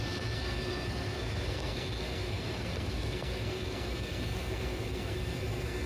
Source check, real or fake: fake